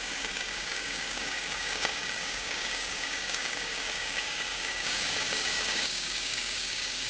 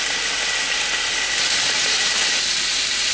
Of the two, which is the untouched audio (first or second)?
second